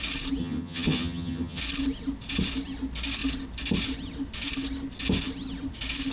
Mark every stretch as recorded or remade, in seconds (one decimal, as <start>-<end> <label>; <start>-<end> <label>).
0.0-0.4 recorded; 0.4-1.6 remade; 1.6-6.1 recorded